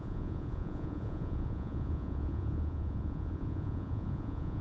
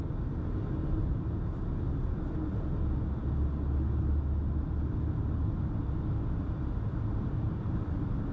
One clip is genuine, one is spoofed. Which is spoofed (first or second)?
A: first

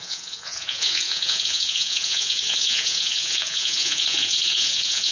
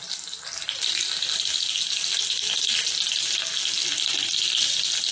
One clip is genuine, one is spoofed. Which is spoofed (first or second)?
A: first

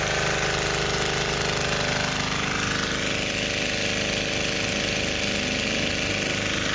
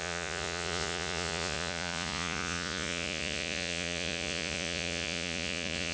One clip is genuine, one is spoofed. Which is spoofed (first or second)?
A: second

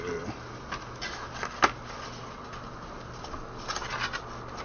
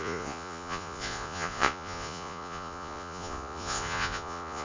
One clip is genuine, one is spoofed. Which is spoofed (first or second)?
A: second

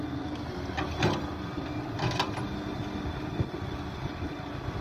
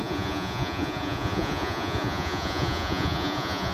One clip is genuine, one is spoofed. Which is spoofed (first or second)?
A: second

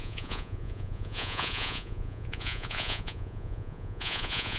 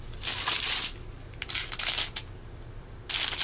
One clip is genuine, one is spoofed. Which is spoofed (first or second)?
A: first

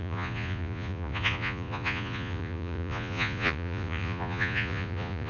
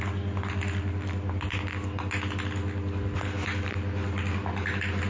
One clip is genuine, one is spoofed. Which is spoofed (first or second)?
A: first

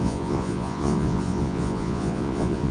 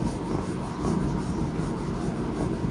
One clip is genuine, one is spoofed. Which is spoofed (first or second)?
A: first